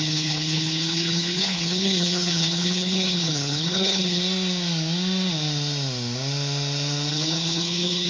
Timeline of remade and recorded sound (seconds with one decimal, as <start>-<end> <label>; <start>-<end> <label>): 0.0-4.2 remade; 4.2-7.1 recorded; 7.1-8.1 remade